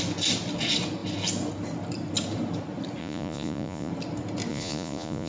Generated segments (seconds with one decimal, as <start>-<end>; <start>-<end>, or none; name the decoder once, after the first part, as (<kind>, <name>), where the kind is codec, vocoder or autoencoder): 3.0-3.9 (vocoder, Vocos); 4.5-5.3